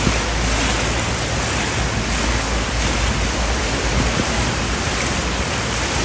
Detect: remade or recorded recorded